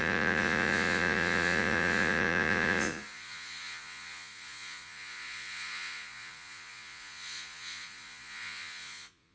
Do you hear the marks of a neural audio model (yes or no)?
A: yes